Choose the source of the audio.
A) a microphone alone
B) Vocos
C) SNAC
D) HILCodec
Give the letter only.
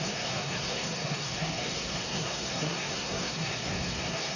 C